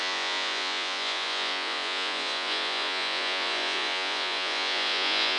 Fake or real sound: fake